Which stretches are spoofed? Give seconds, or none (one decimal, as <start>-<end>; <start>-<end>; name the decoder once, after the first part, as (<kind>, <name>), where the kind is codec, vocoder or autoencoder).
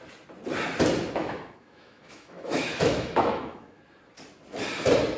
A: 1.2-3.8 (autoencoder, DAC-VAE)